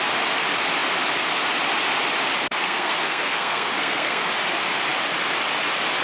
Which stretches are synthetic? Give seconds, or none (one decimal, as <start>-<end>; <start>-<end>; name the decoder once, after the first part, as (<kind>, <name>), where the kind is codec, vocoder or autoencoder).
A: 2.6-4.3 (codec, SNAC)